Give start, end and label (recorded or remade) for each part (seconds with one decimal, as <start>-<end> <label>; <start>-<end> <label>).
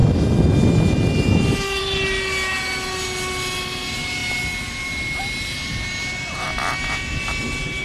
0.0-7.8 recorded